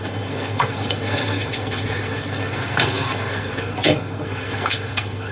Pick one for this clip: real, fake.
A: fake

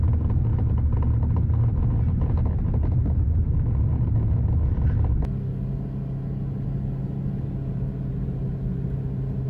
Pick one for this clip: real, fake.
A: real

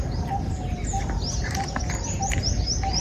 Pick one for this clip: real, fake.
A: real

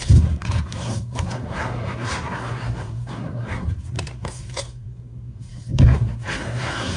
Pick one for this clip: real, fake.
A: fake